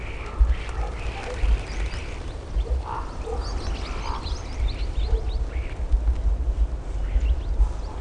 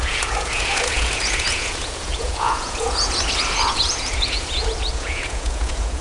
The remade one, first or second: second